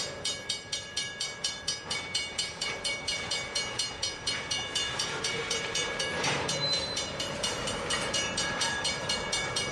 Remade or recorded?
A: remade